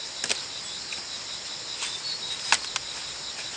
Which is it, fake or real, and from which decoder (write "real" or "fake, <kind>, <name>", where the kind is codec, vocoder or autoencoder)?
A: real